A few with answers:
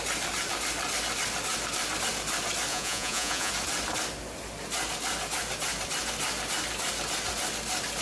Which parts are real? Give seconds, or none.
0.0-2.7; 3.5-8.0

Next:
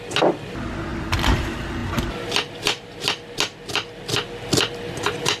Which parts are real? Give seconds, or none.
0.0-5.4

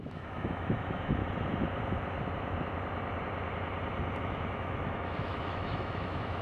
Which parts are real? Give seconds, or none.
1.2-4.2

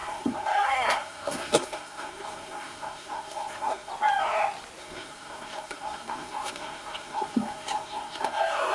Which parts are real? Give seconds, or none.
3.9-4.8